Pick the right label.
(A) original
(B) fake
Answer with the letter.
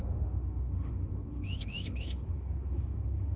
B